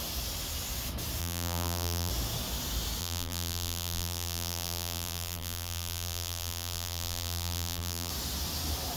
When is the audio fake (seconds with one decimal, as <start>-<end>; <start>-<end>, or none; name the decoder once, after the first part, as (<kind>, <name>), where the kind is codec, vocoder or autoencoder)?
1.2-2.1 (vocoder, BigVGAN v2); 3.0-8.1